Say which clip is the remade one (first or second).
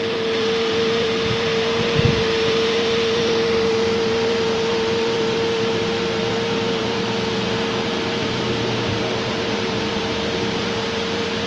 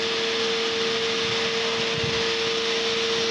first